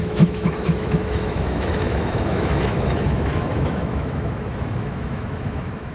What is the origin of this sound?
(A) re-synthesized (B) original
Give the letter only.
A